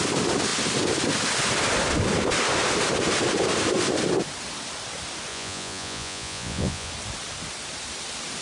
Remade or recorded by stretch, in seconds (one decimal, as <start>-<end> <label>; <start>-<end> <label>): 0.0-5.3 recorded; 5.3-6.9 remade; 6.9-8.4 recorded

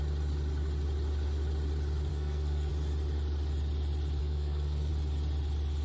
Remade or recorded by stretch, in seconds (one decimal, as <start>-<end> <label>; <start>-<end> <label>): 0.0-2.1 recorded; 2.1-2.7 remade; 2.7-4.2 recorded; 4.2-4.9 remade; 4.9-5.8 recorded

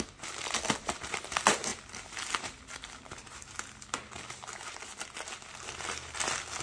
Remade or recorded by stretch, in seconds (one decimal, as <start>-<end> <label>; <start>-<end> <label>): 0.0-6.6 recorded

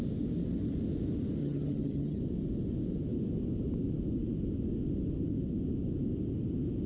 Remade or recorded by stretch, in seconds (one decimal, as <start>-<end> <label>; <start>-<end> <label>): 0.0-1.4 recorded; 1.4-2.2 remade; 2.2-6.9 recorded

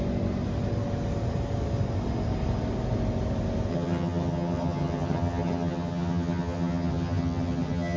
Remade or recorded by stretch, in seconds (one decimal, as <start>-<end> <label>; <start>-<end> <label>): 0.0-3.7 recorded; 3.7-8.0 remade

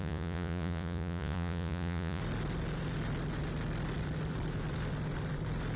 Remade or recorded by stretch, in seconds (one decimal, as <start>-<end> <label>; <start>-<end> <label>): 0.0-2.2 remade; 2.2-5.8 recorded

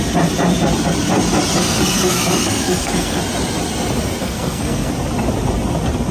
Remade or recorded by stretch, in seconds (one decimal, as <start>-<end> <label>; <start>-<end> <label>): 0.0-1.6 recorded; 1.6-3.2 remade; 3.2-4.2 recorded; 4.2-4.9 remade; 4.9-6.1 recorded

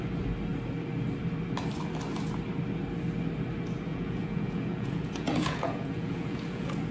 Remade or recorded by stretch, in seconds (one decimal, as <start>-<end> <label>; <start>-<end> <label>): 0.0-3.9 recorded; 3.9-6.9 remade